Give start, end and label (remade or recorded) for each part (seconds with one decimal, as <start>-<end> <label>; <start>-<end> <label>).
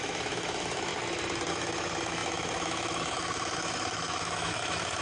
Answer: 0.0-0.9 remade; 0.9-1.5 recorded; 1.5-5.0 remade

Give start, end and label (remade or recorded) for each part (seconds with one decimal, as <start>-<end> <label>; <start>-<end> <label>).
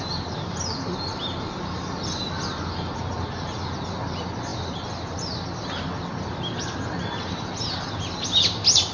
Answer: 0.0-8.9 recorded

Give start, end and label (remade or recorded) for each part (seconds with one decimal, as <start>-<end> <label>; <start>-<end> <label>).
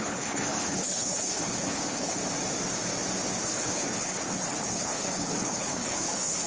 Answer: 0.0-2.2 remade; 2.2-3.4 recorded; 3.4-6.5 remade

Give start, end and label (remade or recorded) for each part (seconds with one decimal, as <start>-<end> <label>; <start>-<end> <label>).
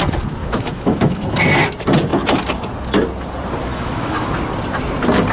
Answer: 0.0-0.4 recorded; 0.4-1.4 remade; 1.4-3.7 recorded; 3.7-4.4 remade; 4.4-5.3 recorded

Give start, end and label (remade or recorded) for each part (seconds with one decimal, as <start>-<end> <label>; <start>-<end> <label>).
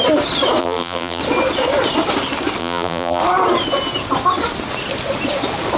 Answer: 0.0-0.6 recorded; 0.6-1.2 remade; 1.2-2.6 recorded; 2.6-3.2 remade; 3.2-5.8 recorded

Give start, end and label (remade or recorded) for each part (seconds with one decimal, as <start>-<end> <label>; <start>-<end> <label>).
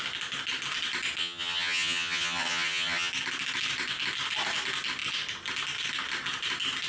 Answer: 0.0-1.2 recorded; 1.2-3.1 remade; 3.1-6.9 recorded